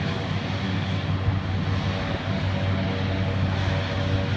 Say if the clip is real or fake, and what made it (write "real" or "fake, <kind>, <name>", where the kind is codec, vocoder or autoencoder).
real